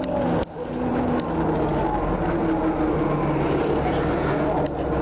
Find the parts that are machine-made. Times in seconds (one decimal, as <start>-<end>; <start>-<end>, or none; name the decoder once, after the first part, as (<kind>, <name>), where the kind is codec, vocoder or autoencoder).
none